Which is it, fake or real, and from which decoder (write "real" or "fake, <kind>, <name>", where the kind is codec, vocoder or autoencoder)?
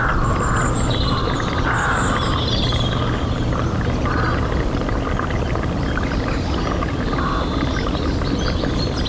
real